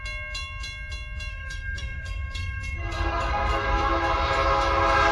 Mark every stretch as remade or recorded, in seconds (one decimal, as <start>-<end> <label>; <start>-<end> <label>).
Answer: 0.0-1.3 recorded; 1.3-3.9 remade; 3.9-5.1 recorded